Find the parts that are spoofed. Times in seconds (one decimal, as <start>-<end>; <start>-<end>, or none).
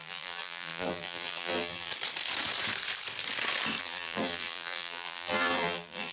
0.0-1.9; 3.8-6.1